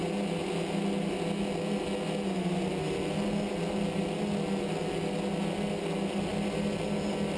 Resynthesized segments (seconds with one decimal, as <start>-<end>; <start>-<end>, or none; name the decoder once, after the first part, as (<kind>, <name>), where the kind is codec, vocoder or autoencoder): none